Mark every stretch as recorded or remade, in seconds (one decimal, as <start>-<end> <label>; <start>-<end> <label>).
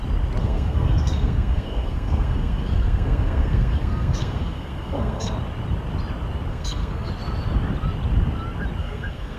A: 0.0-0.4 recorded; 0.4-5.3 remade; 5.3-6.5 recorded; 6.5-7.1 remade; 7.1-8.8 recorded; 8.8-9.4 remade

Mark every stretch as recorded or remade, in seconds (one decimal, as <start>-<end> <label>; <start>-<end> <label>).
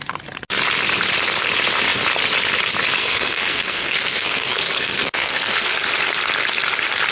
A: 0.0-3.0 recorded; 3.0-5.8 remade; 5.8-7.1 recorded